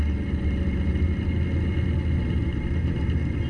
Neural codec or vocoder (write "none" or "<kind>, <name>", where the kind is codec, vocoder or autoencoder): none